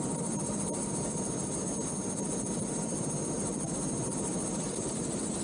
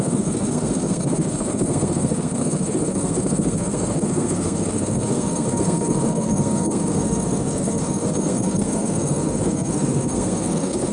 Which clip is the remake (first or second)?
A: second